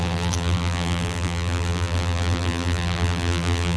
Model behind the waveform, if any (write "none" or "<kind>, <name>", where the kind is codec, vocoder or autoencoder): vocoder, BigVGAN v2